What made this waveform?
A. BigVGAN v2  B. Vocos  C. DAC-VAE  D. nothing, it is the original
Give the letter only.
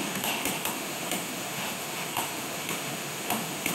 C